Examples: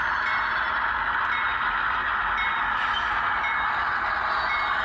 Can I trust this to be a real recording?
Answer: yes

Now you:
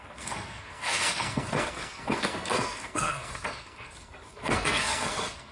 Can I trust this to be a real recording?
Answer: no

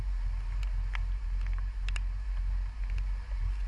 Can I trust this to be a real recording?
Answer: yes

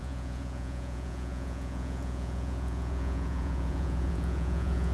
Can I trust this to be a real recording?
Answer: no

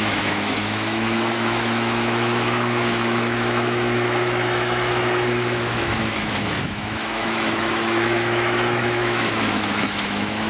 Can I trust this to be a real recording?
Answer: no